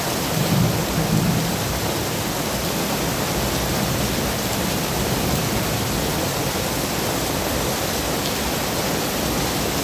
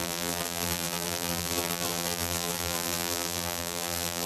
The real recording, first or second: first